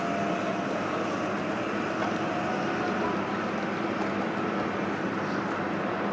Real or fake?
real